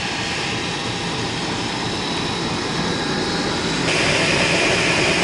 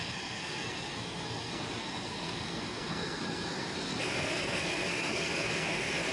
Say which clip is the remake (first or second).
second